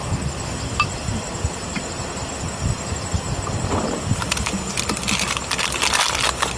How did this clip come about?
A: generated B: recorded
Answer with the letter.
B